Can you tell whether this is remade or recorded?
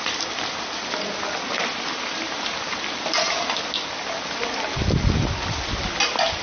recorded